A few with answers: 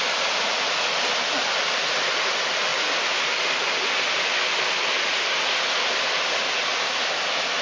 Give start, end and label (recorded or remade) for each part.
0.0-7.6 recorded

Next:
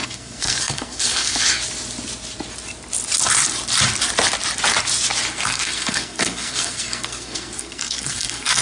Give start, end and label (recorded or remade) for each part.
0.0-1.6 remade; 1.6-5.3 recorded; 5.3-8.6 remade